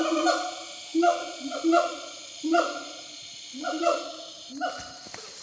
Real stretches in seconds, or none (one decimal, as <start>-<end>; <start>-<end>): 0.0-0.9; 4.1-5.4